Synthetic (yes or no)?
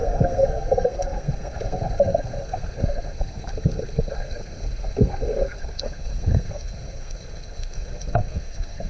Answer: yes